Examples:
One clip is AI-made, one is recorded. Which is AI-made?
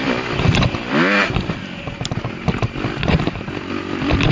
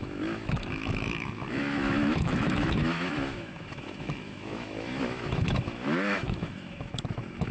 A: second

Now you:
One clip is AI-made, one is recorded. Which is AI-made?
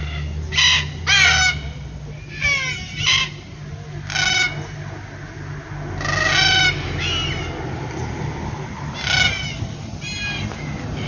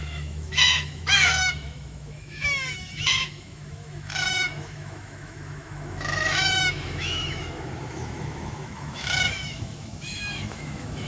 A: second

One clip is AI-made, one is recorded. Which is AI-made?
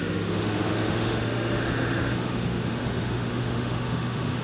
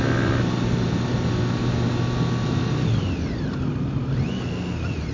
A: first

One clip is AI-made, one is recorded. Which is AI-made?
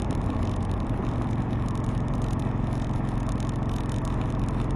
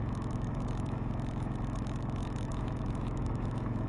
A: second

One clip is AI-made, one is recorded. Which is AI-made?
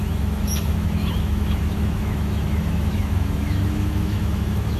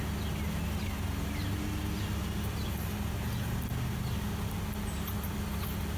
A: first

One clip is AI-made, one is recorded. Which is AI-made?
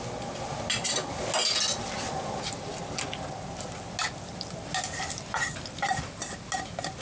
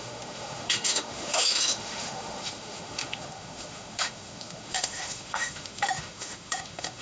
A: second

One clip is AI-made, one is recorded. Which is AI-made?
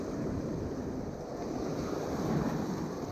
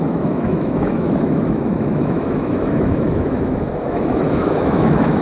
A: second